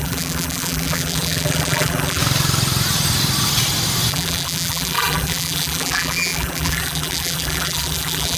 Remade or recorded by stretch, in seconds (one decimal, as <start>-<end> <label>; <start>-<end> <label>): 0.0-2.2 remade; 2.2-4.1 recorded; 4.1-8.4 remade